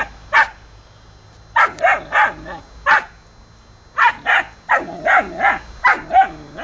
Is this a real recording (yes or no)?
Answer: yes